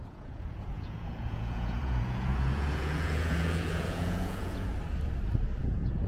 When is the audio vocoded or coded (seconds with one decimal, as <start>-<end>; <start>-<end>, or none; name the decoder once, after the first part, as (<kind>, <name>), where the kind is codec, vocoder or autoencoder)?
0.0-4.7 (vocoder, Vocos); 5.6-6.1